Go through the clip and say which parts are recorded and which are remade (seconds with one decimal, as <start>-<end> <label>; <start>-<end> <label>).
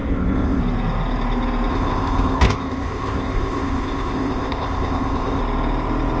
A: 0.0-0.6 remade; 0.6-1.7 recorded; 1.7-5.4 remade; 5.4-6.2 recorded